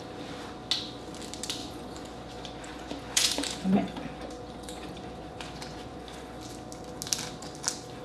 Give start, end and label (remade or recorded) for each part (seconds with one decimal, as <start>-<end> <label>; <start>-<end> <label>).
0.0-1.6 recorded; 1.6-6.4 remade; 6.4-8.0 recorded